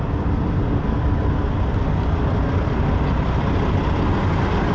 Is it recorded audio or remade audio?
recorded